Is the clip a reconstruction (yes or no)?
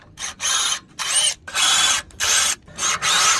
no